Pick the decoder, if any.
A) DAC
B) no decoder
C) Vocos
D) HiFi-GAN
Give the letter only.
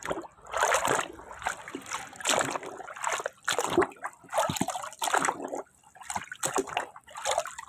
B